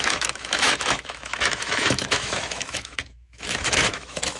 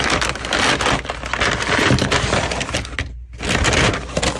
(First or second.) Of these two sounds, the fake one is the first